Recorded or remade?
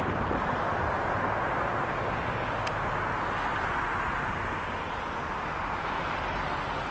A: recorded